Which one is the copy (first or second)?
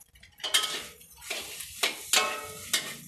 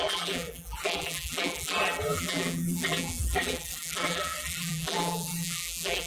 second